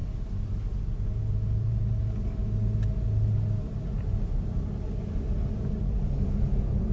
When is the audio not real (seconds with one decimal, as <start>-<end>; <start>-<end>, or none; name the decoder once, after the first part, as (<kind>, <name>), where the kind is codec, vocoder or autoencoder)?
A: 0.8-2.0 (vocoder, Vocos); 5.8-6.9